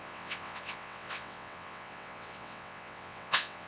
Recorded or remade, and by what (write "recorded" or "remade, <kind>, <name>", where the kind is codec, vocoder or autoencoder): remade, vocoder, WaveNeXt